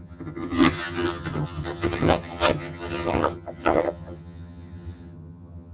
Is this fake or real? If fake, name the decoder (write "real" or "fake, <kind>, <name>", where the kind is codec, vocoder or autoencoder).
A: fake, vocoder, HiFi-GAN